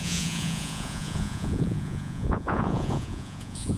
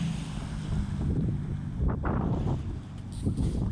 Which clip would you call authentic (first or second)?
second